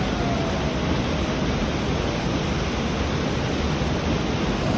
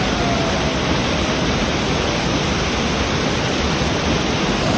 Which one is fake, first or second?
second